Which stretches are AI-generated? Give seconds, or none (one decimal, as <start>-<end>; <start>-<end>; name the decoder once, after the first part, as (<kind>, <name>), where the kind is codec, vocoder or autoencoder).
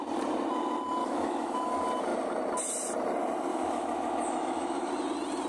1.0-1.7 (autoencoder, DAC-VAE); 3.5-4.9